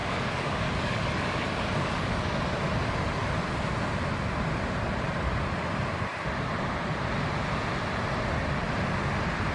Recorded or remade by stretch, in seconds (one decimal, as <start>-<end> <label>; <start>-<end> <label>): 0.0-2.6 remade; 2.6-9.5 recorded